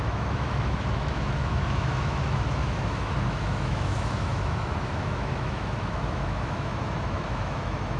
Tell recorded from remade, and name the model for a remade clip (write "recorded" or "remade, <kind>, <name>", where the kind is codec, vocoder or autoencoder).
remade, autoencoder, DAC-VAE